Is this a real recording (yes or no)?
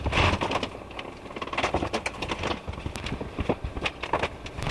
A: yes